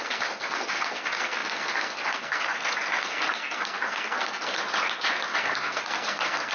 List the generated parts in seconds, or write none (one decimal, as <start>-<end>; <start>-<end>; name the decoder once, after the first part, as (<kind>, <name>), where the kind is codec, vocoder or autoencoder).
0.0-4.6 (codec, SNAC); 5.4-6.5